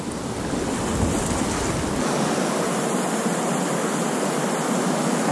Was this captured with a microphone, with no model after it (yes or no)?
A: yes